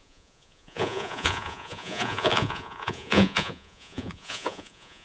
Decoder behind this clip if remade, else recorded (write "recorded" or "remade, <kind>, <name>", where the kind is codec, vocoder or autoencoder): remade, vocoder, Vocos